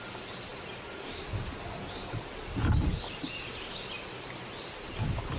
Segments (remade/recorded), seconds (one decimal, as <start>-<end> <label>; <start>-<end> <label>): 0.0-5.4 recorded